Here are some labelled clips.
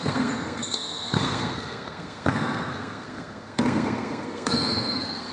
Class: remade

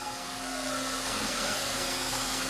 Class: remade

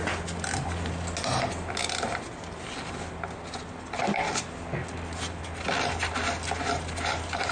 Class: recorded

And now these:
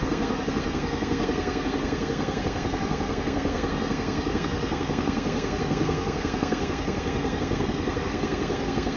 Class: remade